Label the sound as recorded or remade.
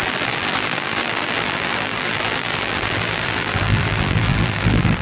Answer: remade